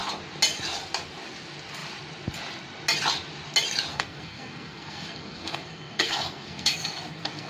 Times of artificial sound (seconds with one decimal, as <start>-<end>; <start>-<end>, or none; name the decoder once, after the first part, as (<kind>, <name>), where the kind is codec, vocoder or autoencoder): 3.9-7.5 (codec, SNAC)